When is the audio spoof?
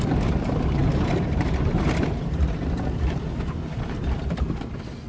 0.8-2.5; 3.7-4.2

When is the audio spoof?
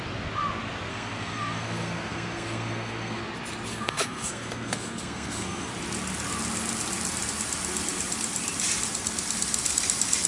0.9-3.2; 3.7-5.7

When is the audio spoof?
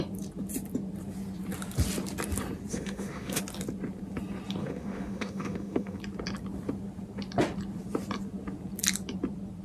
2.7-3.4; 4.6-6.0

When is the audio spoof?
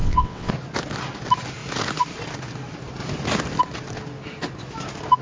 0.0-0.5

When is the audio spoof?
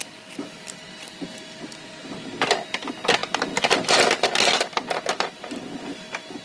none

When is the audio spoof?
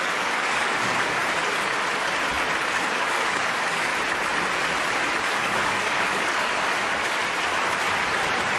0.0-1.2; 2.7-3.9; 5.2-7.2